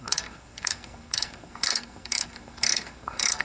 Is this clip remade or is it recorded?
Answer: remade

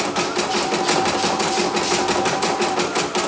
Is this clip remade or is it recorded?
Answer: recorded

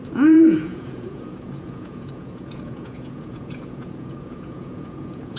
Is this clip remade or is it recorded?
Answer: remade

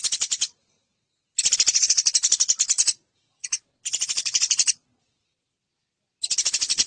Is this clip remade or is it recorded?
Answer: recorded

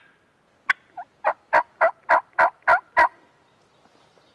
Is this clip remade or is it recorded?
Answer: recorded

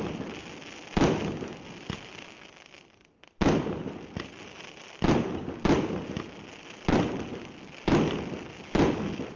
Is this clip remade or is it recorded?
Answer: recorded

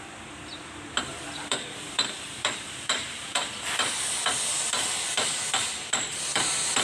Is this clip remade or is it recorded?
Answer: remade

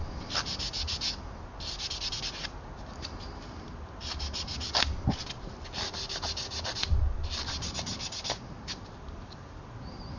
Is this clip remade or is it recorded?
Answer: recorded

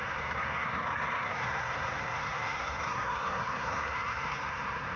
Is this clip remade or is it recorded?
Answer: remade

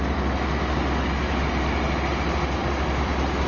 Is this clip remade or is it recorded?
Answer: recorded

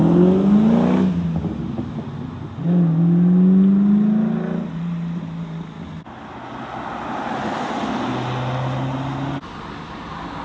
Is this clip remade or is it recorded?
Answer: recorded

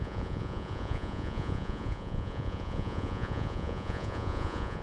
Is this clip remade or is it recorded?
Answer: remade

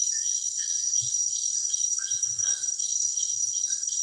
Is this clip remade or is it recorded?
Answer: remade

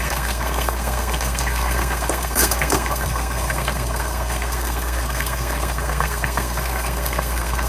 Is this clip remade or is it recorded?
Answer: remade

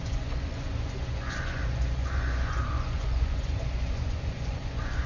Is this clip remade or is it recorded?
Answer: remade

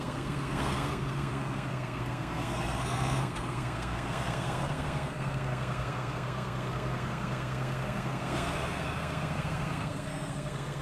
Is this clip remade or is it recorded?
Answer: remade